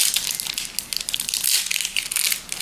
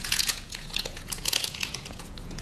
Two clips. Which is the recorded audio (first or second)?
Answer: first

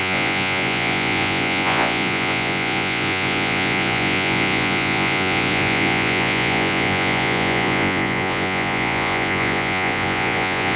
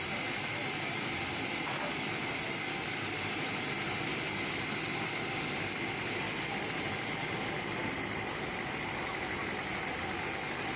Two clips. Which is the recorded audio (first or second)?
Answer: second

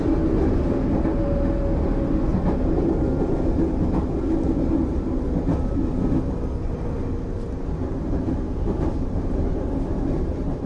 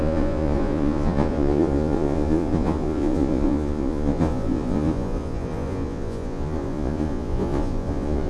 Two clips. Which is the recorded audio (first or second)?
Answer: first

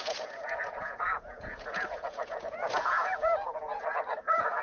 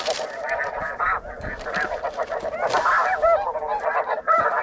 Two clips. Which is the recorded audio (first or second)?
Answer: second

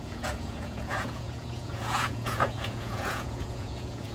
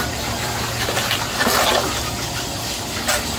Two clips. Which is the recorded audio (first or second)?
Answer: second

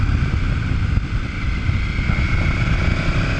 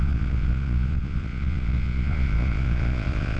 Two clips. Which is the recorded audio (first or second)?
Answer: first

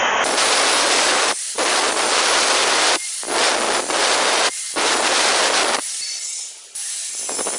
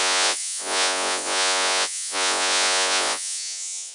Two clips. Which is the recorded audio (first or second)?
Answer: first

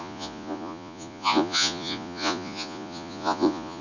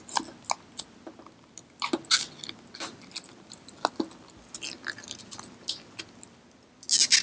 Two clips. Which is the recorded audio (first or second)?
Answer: second